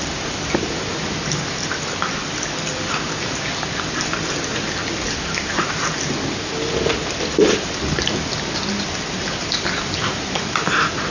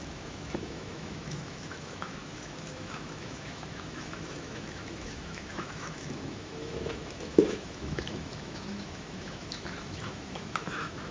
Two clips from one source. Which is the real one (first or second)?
first